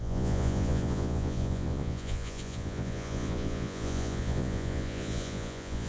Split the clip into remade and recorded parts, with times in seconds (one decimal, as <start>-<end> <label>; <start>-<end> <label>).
0.0-5.9 remade